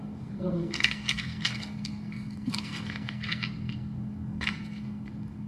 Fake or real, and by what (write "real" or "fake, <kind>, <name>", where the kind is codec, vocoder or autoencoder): fake, codec, SNAC